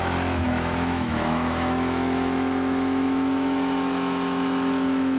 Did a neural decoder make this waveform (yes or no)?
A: yes